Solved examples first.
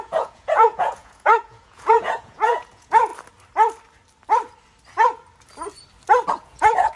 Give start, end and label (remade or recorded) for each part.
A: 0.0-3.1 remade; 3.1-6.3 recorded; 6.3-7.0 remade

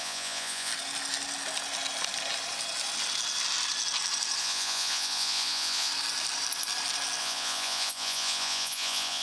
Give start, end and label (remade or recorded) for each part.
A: 0.0-0.7 remade; 0.7-4.4 recorded; 4.4-5.9 remade; 5.9-7.2 recorded; 7.2-9.2 remade

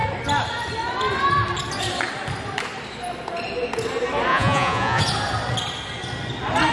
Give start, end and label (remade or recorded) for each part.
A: 0.0-4.3 recorded; 4.3-5.0 remade; 5.0-6.7 recorded

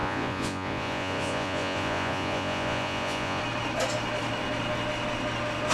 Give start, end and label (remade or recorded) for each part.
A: 0.0-3.4 remade; 3.4-5.7 recorded

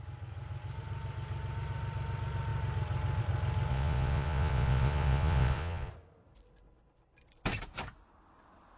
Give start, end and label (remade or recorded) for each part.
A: 0.0-3.7 recorded; 3.7-5.9 remade; 5.9-8.8 recorded

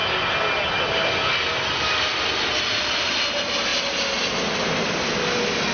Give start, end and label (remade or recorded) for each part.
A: 0.0-5.7 recorded

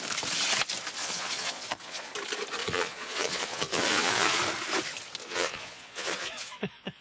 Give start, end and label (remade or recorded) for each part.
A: 0.0-1.0 recorded; 1.0-2.1 remade; 2.1-2.6 recorded; 2.6-4.4 remade; 4.4-5.2 recorded; 5.2-7.0 remade

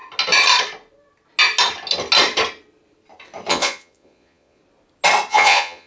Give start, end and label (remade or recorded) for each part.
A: 0.0-3.5 recorded; 3.5-4.6 remade; 4.6-5.3 recorded; 5.3-5.9 remade